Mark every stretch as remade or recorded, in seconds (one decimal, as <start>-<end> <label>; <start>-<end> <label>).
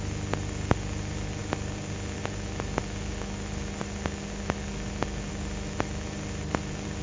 0.0-7.0 recorded